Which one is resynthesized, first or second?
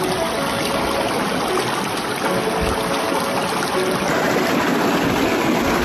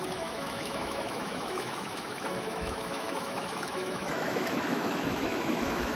second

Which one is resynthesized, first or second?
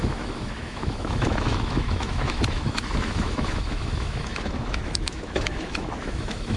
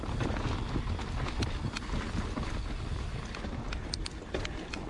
first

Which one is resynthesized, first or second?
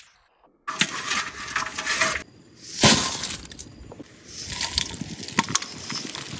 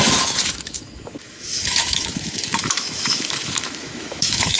second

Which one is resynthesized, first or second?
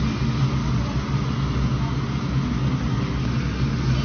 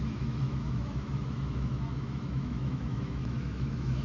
second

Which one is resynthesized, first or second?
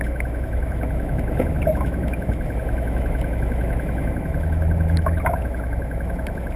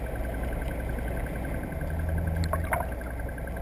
first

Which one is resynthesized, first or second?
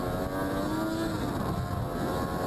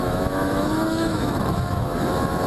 second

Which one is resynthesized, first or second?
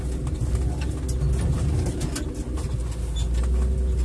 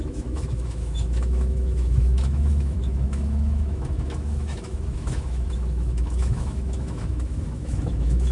second